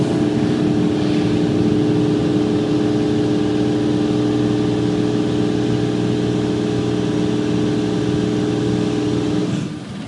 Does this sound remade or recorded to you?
recorded